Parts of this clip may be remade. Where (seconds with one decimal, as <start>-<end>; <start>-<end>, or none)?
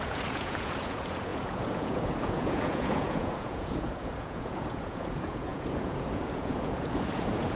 0.0-7.6